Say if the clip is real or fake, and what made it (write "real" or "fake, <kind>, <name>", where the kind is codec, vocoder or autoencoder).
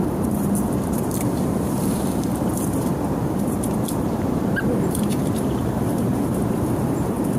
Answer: fake, vocoder, BigVGAN v2